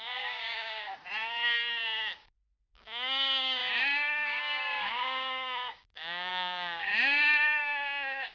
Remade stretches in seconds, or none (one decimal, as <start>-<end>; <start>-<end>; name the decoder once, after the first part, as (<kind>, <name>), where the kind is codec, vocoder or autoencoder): 0.0-0.9 (codec, DAC); 2.2-3.6; 4.4-6.9; 7.6-8.3